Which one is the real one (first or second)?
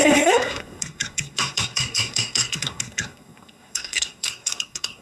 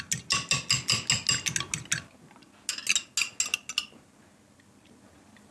second